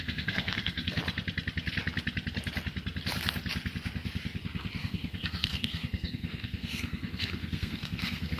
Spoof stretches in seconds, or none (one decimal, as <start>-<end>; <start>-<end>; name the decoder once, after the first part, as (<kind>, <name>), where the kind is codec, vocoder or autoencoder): 0.0-1.0 (codec, SNAC); 4.8-8.4